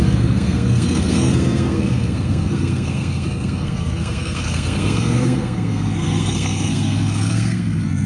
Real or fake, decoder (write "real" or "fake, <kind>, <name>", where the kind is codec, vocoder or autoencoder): fake, codec, SNAC